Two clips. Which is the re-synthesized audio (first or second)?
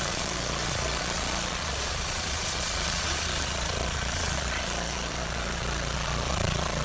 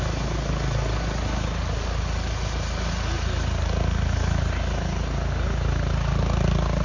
first